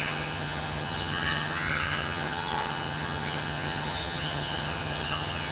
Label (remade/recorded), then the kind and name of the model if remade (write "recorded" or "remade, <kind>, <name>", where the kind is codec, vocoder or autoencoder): remade, vocoder, HiFi-GAN